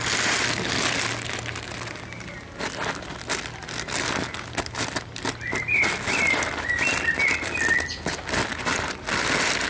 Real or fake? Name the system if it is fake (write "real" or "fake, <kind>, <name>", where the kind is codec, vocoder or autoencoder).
real